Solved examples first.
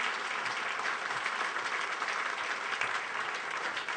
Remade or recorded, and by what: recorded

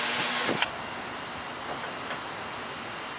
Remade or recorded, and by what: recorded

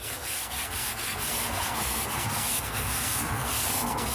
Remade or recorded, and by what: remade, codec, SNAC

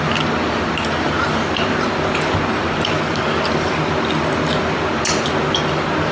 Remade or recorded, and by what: recorded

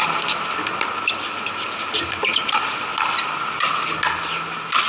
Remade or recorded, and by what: recorded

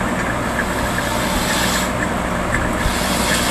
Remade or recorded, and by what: recorded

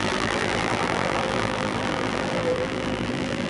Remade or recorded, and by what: remade, vocoder, BigVGAN v2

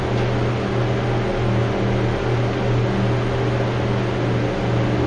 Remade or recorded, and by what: recorded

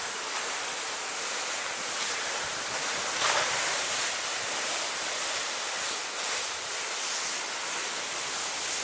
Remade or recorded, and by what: recorded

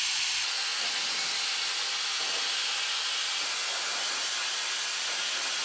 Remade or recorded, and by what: recorded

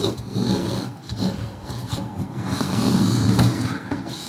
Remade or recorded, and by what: remade, codec, SNAC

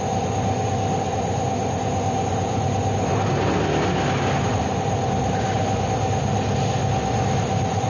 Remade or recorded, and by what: recorded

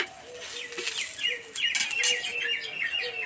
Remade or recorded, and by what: recorded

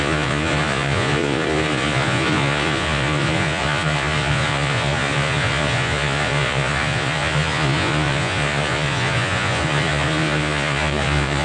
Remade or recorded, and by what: remade, vocoder, Vocos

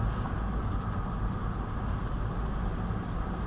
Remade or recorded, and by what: recorded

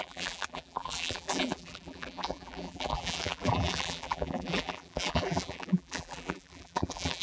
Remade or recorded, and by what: remade, vocoder, BigVGAN v2